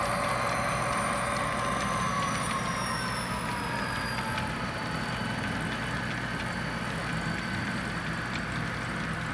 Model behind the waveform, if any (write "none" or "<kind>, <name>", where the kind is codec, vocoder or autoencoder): none